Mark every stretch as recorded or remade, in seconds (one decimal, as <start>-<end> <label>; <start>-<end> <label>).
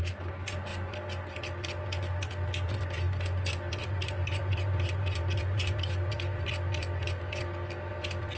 0.0-3.8 recorded; 3.8-6.5 remade; 6.5-8.4 recorded